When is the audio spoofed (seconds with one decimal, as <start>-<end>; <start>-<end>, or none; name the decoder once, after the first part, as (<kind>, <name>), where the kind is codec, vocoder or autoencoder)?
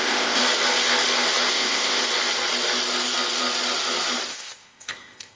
0.0-0.4 (codec, ZipCodec); 1.5-2.0; 4.3-5.4